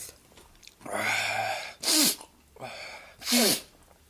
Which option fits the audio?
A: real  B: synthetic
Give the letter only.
A